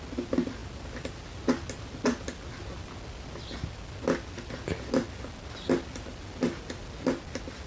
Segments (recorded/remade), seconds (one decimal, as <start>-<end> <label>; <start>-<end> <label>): 0.0-7.7 recorded